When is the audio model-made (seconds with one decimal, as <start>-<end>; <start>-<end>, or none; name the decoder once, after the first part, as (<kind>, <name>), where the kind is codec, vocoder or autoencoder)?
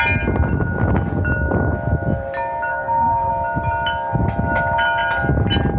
2.7-3.3 (codec, SNAC)